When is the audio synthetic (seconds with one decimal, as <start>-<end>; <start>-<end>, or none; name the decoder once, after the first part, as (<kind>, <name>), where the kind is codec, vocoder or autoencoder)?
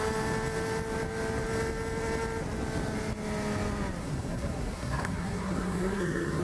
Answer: 4.0-6.4 (codec, SNAC)